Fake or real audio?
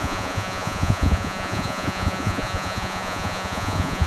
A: fake